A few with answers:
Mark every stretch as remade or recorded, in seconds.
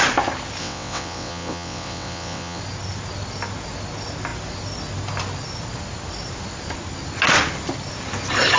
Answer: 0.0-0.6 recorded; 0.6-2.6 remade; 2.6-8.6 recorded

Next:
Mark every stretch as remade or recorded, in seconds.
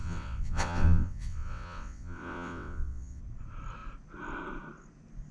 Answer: 0.0-3.2 remade; 3.2-5.3 recorded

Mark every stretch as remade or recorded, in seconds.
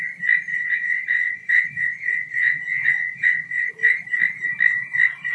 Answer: 0.0-0.5 recorded; 0.5-3.7 remade; 3.7-5.3 recorded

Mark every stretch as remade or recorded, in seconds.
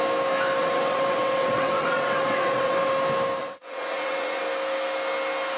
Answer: 0.0-0.6 recorded; 0.6-2.9 remade; 2.9-3.4 recorded; 3.4-4.4 remade; 4.4-5.6 recorded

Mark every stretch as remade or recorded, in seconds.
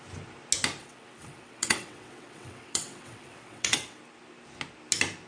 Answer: 0.0-0.8 recorded; 0.8-4.0 remade; 4.0-5.3 recorded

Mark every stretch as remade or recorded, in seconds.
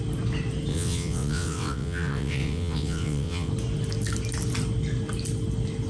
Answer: 0.0-0.7 recorded; 0.7-3.5 remade; 3.5-5.9 recorded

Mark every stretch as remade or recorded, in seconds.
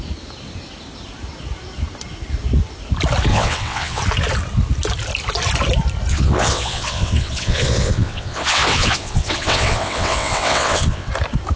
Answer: 0.0-3.3 recorded; 3.3-4.0 remade; 4.0-6.1 recorded; 6.1-11.1 remade; 11.1-11.6 recorded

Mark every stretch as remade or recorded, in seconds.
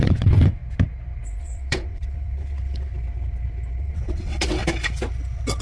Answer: 0.0-0.6 remade; 0.6-1.4 recorded; 1.4-2.9 remade; 2.9-3.8 recorded; 3.8-4.6 remade; 4.6-5.6 recorded